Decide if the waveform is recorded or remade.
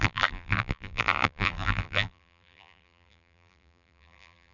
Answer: remade